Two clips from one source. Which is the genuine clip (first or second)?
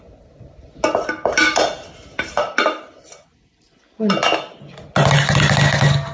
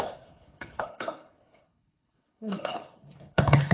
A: first